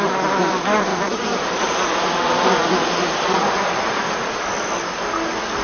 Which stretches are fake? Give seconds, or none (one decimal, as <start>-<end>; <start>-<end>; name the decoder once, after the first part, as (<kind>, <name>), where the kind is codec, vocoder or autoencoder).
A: 0.9-4.3 (vocoder, BigVGAN v2)